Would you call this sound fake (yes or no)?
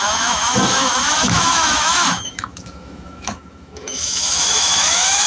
yes